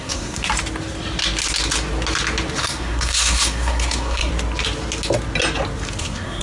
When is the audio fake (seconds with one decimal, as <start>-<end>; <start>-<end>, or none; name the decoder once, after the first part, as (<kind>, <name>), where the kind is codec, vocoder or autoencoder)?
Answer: 0.0-0.4 (codec, SNAC); 2.6-4.3; 6.0-6.4